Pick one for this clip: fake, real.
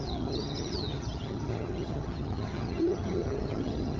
fake